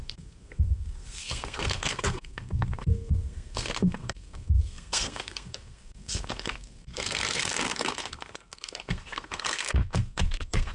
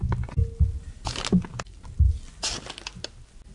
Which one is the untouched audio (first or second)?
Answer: second